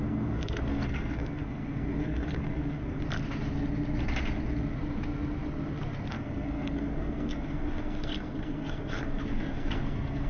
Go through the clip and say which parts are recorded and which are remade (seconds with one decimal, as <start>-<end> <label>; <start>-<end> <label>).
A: 0.0-3.0 remade; 3.0-6.1 recorded; 6.1-10.3 remade